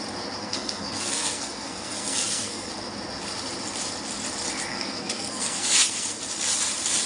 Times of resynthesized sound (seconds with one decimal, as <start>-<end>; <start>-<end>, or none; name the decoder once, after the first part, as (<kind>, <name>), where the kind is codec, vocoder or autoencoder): 0.4-2.7 (codec, SNAC); 4.7-6.2